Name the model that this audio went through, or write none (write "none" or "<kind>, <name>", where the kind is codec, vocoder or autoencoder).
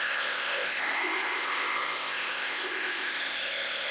codec, ZipCodec